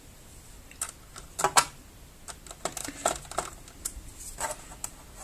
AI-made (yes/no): no